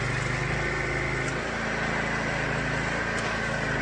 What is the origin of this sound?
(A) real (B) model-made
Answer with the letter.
A